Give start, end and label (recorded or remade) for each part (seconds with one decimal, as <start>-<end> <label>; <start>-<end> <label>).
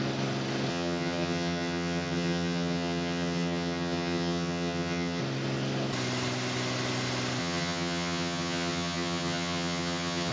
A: 0.0-0.7 recorded; 0.7-5.2 remade; 5.2-7.4 recorded; 7.4-10.3 remade